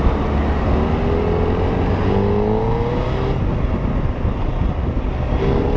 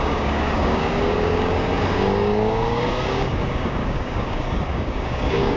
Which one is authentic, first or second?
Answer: first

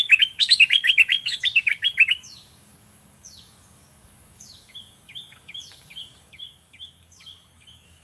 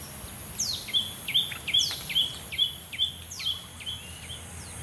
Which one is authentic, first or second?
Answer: second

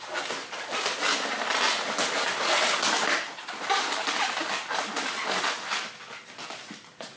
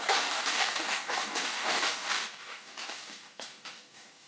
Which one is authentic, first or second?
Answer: first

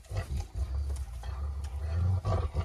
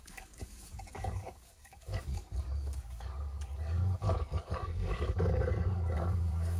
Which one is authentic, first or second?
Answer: first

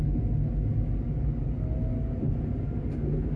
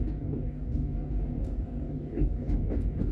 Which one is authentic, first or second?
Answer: first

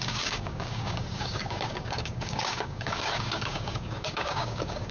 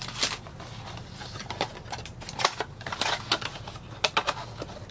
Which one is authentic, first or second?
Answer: second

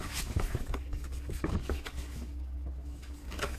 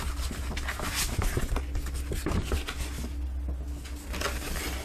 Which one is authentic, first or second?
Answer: second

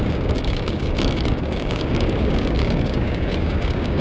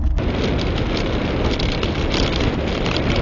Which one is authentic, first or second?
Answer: second